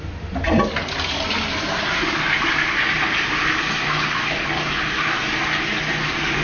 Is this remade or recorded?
recorded